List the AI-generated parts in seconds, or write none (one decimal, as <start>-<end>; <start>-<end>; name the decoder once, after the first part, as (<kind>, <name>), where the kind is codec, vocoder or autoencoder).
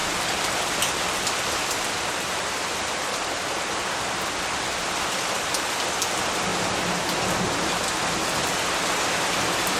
none